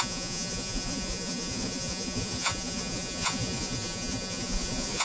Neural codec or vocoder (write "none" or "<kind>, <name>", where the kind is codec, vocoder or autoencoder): vocoder, Vocos